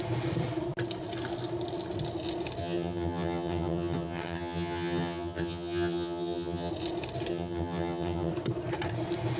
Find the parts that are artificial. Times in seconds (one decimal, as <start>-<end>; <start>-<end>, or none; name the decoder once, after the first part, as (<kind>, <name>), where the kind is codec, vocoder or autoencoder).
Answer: 2.6-6.7 (vocoder, HiFi-GAN); 7.3-8.3